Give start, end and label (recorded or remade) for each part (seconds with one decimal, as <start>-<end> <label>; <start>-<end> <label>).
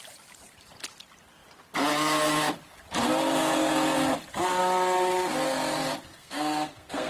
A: 0.0-6.1 recorded; 6.1-7.1 remade